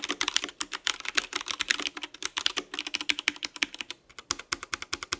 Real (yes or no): yes